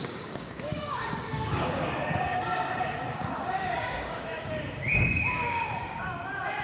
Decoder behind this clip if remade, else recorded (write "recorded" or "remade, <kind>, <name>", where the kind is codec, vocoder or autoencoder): remade, codec, DAC